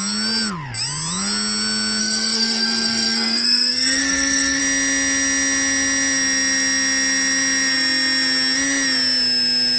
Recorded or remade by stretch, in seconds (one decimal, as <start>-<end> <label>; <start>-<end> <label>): 0.0-2.0 recorded; 2.0-4.6 remade; 4.6-9.8 recorded